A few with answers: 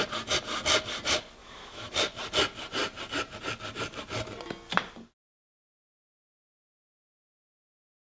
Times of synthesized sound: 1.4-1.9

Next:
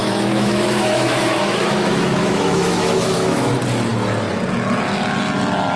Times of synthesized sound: 0.0-3.5

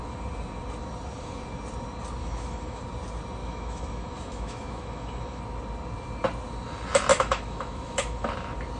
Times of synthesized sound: 2.2-2.8; 3.4-5.4; 7.1-8.3

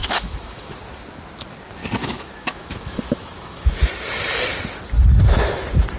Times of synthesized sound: 0.0-0.8; 2.0-3.7

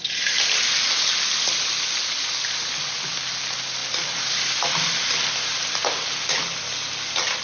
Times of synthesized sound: none